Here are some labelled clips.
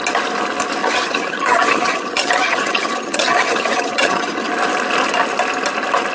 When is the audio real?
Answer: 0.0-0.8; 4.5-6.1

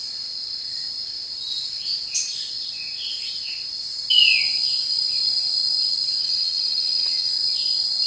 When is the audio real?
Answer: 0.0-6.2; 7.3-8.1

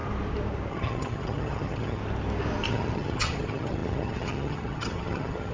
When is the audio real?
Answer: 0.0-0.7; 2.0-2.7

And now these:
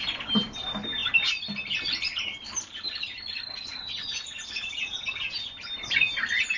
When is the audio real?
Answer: 0.0-6.6